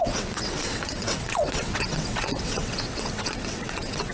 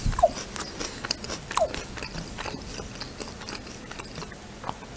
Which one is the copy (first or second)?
first